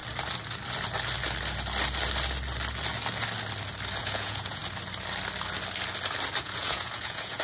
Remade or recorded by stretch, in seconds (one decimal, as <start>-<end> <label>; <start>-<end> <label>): 0.0-4.0 recorded; 4.0-4.6 remade; 4.6-6.4 recorded; 6.4-7.4 remade